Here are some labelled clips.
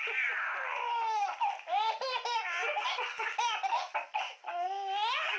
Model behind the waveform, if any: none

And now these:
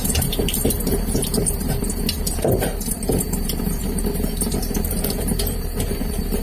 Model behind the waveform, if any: vocoder, BigVGAN v2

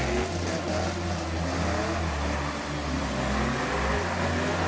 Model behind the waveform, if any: none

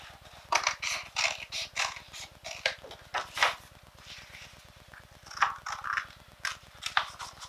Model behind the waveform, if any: none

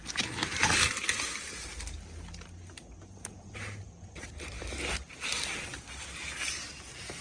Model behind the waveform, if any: none